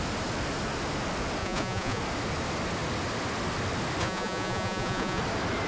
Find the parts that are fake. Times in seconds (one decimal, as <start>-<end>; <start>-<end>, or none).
1.4-2.0; 4.0-5.2